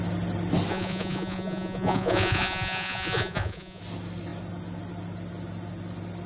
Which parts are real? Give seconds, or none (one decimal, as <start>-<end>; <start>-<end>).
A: 0.0-0.7; 3.8-6.3